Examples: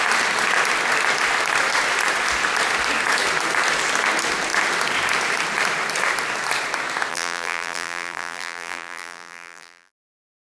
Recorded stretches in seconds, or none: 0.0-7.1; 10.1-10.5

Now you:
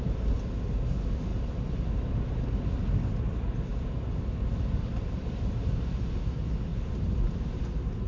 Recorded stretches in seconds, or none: 0.0-6.7

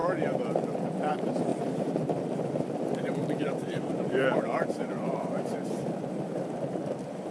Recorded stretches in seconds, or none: 0.0-1.1; 1.5-2.2

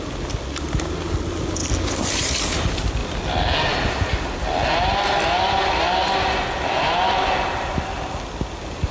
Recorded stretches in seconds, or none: 0.0-8.9

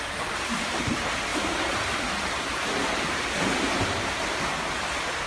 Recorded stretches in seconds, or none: 0.0-1.3; 4.4-5.3

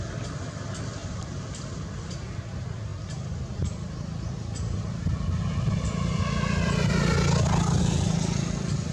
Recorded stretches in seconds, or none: 0.0-1.0; 1.5-8.9